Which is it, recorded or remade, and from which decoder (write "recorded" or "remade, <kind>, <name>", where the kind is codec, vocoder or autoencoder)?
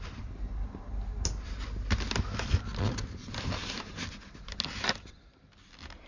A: recorded